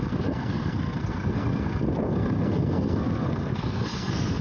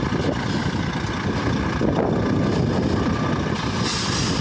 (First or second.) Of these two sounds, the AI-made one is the first